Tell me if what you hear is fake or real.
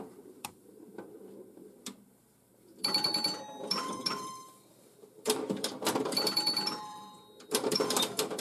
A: fake